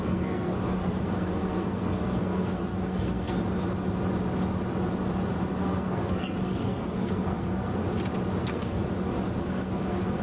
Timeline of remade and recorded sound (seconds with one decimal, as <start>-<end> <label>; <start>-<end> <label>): 0.0-3.4 remade; 3.4-5.5 recorded; 5.5-7.8 remade; 7.8-8.4 recorded; 8.4-8.8 remade; 8.8-9.4 recorded; 9.4-10.2 remade